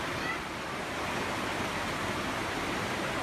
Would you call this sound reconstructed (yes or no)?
no